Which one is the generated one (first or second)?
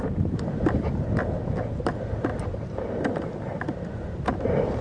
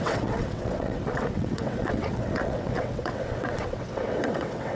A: second